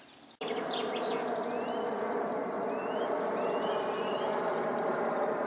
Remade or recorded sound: recorded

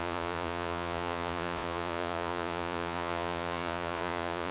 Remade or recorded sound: remade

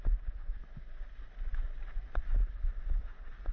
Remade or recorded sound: recorded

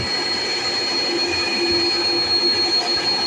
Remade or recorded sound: recorded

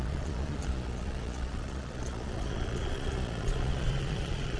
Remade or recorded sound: remade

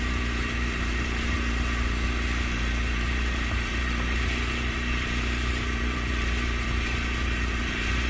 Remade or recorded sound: remade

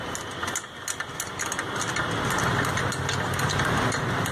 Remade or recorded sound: recorded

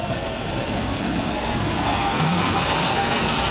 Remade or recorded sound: remade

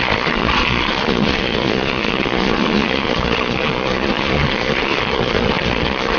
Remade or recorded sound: remade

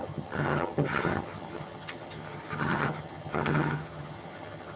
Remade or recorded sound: remade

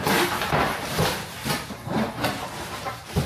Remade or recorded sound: remade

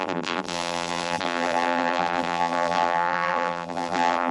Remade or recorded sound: remade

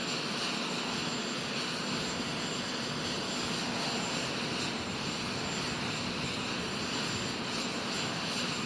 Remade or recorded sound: recorded